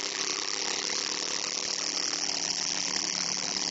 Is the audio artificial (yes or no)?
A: yes